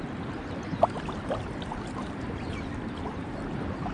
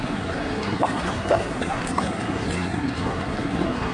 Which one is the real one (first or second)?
first